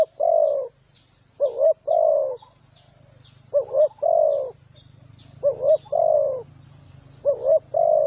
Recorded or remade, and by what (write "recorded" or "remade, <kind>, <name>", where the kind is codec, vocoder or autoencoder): recorded